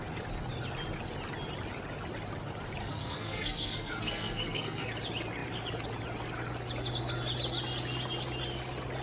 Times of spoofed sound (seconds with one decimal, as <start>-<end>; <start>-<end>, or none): 2.8-4.9